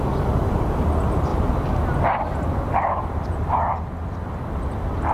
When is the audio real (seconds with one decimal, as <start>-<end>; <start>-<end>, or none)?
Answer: 0.0-5.1